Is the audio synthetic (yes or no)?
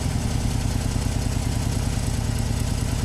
no